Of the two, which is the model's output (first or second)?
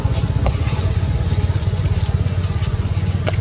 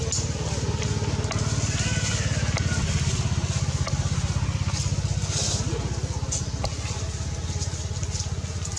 first